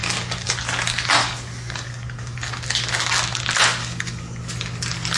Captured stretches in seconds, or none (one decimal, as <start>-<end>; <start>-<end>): 0.5-1.2; 2.5-3.8; 4.4-5.2